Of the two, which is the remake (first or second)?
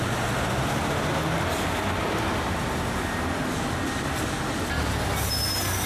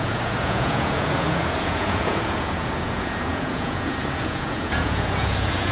second